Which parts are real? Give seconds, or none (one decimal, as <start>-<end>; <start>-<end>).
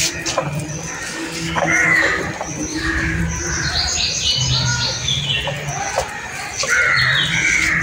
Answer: 0.0-1.1; 2.2-2.7; 3.2-4.7; 5.2-7.8